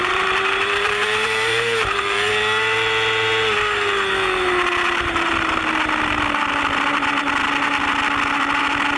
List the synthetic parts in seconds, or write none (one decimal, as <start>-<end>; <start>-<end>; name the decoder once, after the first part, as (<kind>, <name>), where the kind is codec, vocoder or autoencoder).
0.0-2.3 (vocoder, BigVGAN v2)